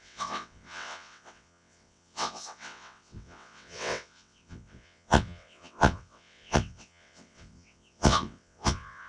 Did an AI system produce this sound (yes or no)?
yes